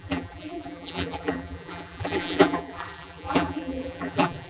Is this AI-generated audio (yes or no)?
yes